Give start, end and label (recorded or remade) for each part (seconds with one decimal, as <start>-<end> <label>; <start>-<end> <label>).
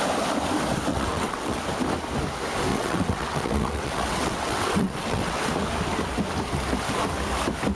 0.0-0.9 recorded; 0.9-1.6 remade; 1.6-2.7 recorded; 2.7-5.4 remade; 5.4-7.7 recorded